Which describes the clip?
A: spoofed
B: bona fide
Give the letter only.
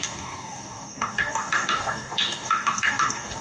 A